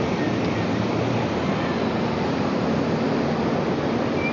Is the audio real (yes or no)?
yes